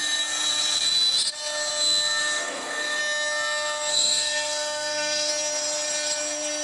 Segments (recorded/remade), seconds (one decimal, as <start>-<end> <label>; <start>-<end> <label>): 0.0-2.2 recorded; 2.2-3.0 remade; 3.0-3.9 recorded; 3.9-5.3 remade; 5.3-6.6 recorded